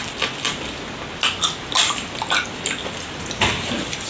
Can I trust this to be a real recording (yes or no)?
yes